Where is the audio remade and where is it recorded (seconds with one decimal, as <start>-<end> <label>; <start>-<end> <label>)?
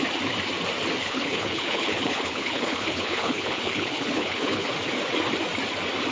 0.0-1.0 recorded; 1.0-4.7 remade; 4.7-6.1 recorded